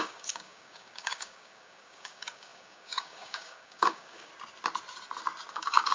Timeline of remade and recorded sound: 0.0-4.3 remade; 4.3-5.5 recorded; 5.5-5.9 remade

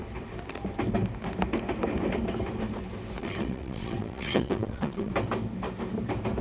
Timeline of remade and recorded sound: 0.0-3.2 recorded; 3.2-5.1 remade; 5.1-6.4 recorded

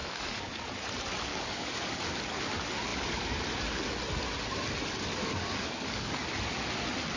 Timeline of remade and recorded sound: 0.0-0.6 remade; 0.6-1.3 recorded; 1.3-2.0 remade; 2.0-5.1 recorded; 5.1-6.1 remade; 6.1-7.2 recorded

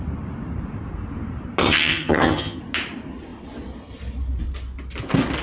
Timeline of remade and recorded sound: 0.0-1.6 recorded; 1.6-2.6 remade; 2.6-5.4 recorded

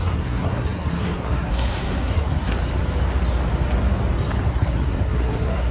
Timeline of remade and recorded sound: 0.0-2.5 remade; 2.5-4.5 recorded; 4.5-5.7 remade